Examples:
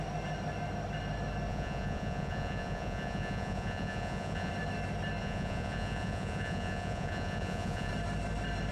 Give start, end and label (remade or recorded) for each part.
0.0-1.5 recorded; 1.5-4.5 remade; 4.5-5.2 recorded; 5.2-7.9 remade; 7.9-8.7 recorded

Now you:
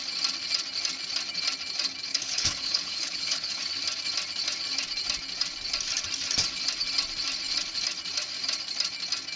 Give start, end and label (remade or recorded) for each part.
0.0-2.1 recorded; 2.1-3.6 remade; 3.6-9.4 recorded